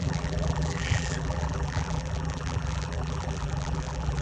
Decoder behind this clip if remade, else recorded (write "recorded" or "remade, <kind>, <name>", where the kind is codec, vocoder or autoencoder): remade, vocoder, BigVGAN v2